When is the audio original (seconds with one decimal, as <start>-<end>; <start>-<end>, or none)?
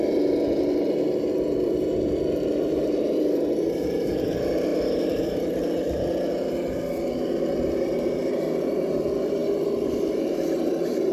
none